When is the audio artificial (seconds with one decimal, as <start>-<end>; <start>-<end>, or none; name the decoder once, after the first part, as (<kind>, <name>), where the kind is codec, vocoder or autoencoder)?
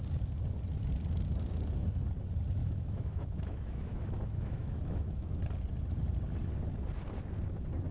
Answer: 2.6-5.4 (autoencoder, DAC-VAE)